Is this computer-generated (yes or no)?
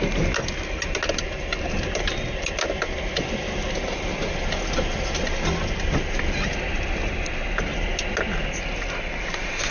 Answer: no